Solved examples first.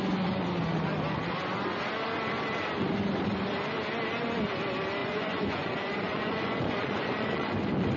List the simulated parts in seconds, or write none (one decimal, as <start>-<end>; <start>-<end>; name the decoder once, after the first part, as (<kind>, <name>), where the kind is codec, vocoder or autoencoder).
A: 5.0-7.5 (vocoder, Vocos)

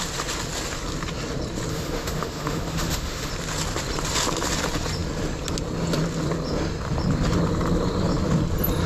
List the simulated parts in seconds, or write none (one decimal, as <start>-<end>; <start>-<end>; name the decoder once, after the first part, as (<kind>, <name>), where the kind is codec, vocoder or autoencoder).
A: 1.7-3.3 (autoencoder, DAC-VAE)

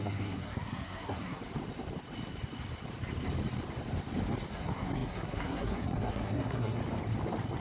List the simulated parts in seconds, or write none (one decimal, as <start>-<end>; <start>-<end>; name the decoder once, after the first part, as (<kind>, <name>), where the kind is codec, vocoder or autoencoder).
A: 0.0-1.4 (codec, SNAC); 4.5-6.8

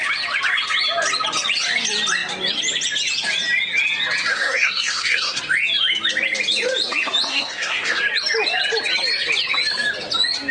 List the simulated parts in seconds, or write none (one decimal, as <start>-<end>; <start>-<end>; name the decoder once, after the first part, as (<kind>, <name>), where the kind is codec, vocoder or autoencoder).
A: 4.3-5.4 (codec, SNAC); 7.3-8.0